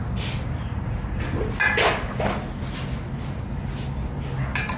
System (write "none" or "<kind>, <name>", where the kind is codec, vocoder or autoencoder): none